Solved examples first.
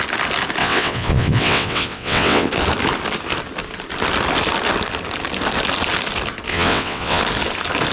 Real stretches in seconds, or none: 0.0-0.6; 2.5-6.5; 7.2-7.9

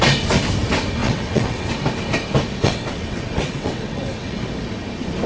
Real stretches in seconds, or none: 0.0-1.0; 1.7-2.6; 4.4-5.3

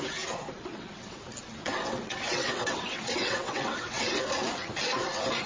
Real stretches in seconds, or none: 0.0-0.7; 1.2-1.6; 4.2-5.5